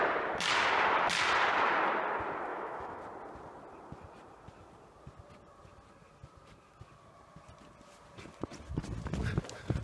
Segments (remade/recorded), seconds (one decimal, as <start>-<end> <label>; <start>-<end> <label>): 0.0-2.5 recorded; 2.5-3.0 remade; 3.0-9.8 recorded